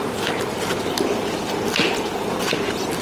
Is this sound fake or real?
real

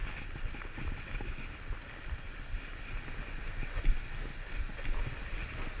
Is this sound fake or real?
real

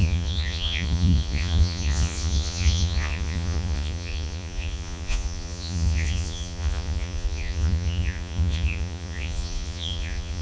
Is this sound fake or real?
fake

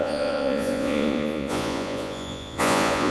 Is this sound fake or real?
fake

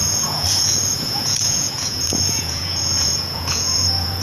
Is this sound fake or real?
fake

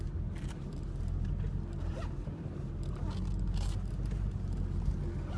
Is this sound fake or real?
real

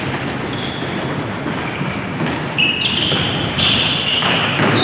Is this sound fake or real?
real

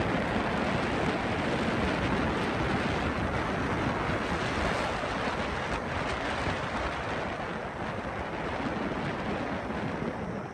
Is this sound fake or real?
real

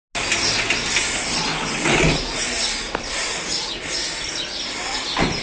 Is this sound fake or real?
real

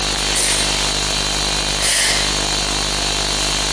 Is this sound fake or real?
real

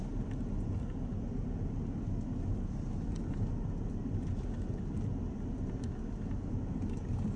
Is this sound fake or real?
real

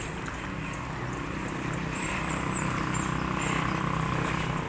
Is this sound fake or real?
real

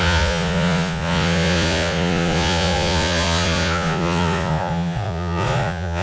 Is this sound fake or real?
fake